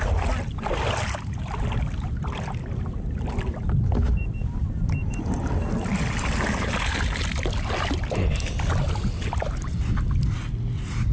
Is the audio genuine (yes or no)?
yes